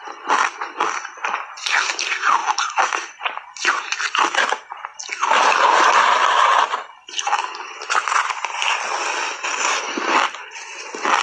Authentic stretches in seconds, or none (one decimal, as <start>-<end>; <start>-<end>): 0.0-2.4; 3.7-11.2